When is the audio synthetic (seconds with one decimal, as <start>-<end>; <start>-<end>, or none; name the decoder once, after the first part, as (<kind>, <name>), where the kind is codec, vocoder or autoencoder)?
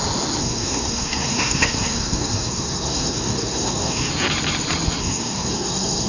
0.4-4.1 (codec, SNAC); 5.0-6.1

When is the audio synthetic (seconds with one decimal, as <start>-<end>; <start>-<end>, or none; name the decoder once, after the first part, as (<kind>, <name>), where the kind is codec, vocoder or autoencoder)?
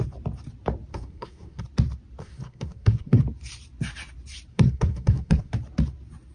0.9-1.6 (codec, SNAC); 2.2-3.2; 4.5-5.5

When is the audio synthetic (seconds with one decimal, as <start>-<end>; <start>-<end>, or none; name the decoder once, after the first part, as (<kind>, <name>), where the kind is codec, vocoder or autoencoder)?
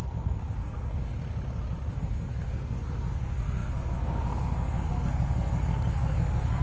0.0-1.2 (codec, SNAC); 1.9-6.6